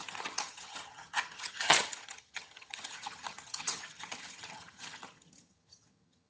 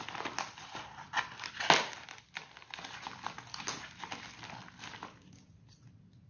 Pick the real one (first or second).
second